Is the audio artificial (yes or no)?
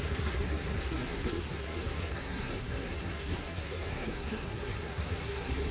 yes